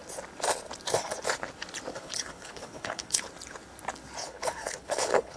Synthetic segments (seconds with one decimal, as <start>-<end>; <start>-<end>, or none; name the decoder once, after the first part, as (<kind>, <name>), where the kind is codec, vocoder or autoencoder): 1.9-3.3 (codec, HILCodec); 4.2-5.4